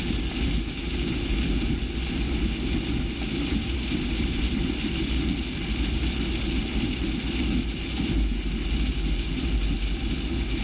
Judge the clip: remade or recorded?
recorded